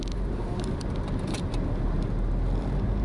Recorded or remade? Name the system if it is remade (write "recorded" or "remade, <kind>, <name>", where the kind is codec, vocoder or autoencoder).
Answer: recorded